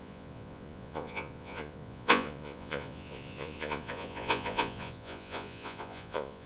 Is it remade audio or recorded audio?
remade